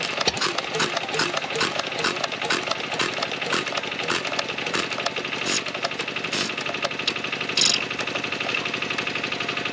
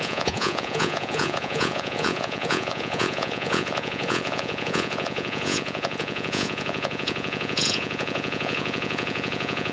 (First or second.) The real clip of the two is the first